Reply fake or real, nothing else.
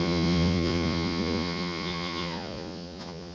fake